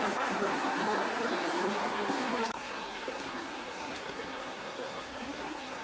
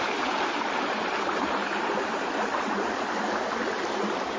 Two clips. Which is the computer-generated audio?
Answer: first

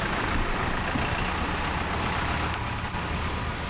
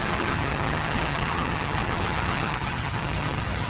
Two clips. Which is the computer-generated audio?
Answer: second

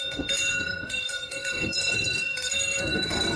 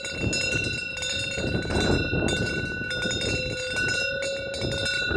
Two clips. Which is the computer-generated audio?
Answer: first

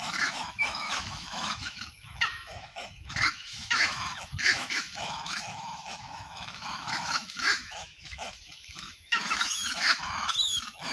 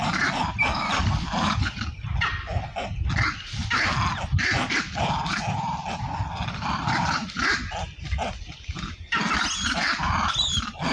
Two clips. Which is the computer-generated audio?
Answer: first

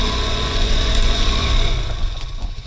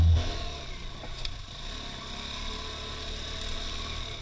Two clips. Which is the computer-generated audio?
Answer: first